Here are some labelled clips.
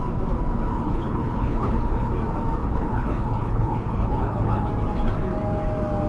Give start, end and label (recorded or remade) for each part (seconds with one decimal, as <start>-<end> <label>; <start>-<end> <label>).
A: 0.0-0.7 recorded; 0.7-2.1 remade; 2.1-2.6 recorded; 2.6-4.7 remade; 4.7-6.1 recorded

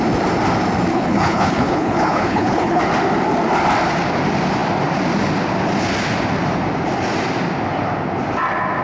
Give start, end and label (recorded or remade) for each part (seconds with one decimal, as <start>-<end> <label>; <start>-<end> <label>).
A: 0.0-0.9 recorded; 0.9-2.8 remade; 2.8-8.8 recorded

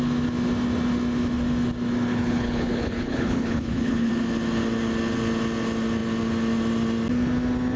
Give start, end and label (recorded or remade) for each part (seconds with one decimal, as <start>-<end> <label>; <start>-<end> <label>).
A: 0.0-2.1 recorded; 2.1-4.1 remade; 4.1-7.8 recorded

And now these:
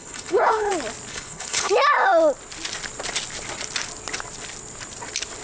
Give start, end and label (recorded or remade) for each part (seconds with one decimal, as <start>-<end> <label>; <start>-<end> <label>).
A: 0.0-0.7 remade; 0.7-1.1 recorded; 1.1-1.7 remade; 1.7-5.4 recorded

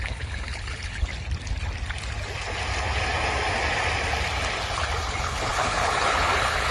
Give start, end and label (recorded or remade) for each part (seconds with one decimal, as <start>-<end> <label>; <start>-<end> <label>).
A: 0.0-1.1 remade; 1.1-5.1 recorded; 5.1-6.7 remade

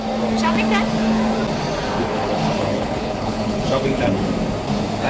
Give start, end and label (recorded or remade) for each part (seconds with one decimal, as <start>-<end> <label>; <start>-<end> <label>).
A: 0.0-2.0 recorded; 2.0-4.2 remade; 4.2-5.1 recorded

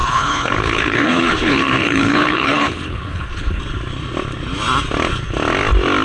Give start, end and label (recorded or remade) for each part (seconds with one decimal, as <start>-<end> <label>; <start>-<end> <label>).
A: 0.0-3.6 remade; 3.6-6.0 recorded